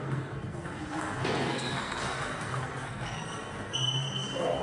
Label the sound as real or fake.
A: fake